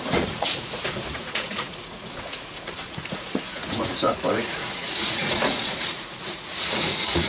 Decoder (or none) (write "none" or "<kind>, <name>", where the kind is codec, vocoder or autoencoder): vocoder, Vocos